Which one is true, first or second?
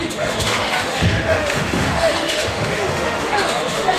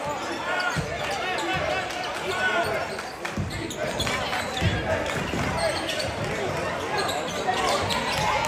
second